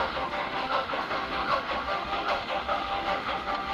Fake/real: fake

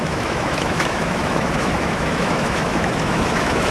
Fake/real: fake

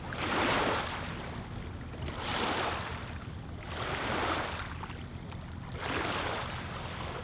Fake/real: real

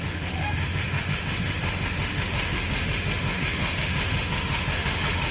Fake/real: fake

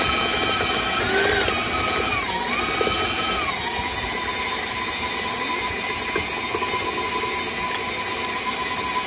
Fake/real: real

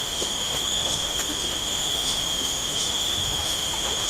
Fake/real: fake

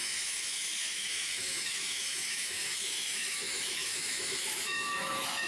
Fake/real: fake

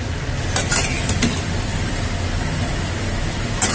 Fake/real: real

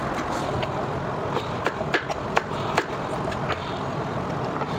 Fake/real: real